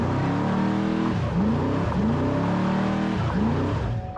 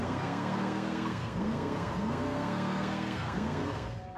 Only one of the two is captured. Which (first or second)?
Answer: first